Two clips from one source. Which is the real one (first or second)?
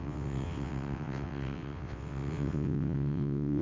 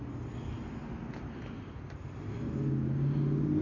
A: second